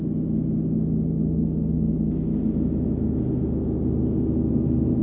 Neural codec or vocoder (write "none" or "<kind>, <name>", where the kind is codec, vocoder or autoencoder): none